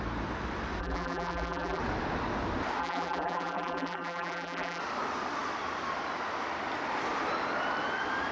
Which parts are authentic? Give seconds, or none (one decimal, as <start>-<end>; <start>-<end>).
0.0-0.8; 1.8-2.8; 4.8-8.3